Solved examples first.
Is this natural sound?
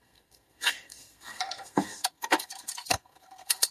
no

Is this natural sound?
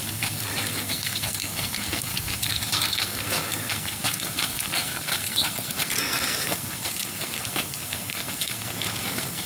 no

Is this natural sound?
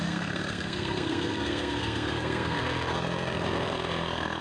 no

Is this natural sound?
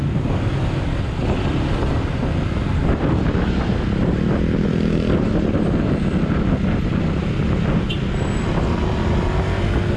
yes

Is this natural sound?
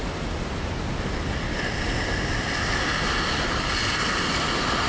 yes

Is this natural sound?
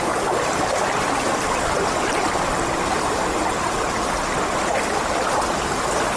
yes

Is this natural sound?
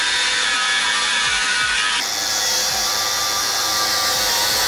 yes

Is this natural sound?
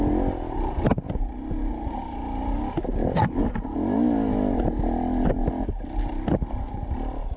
yes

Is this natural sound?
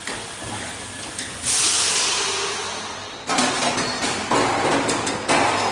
yes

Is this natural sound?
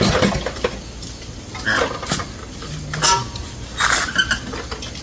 yes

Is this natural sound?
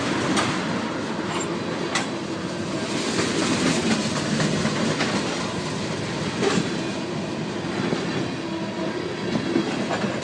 yes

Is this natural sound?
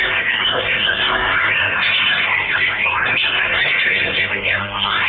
no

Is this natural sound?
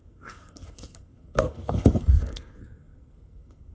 no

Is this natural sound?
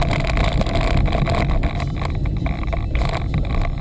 yes